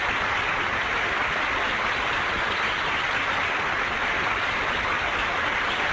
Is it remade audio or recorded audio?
recorded